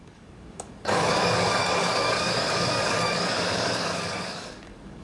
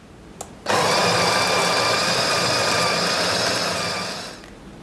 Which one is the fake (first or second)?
first